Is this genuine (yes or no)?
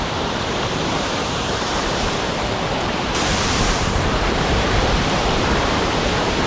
no